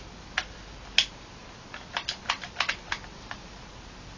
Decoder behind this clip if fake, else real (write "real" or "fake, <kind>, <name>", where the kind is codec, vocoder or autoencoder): real